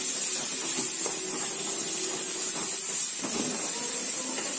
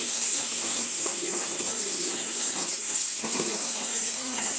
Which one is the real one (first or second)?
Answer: first